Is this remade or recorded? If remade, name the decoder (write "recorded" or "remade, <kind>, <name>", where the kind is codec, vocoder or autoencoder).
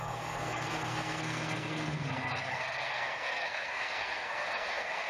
remade, codec, SNAC